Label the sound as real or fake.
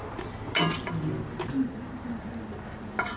real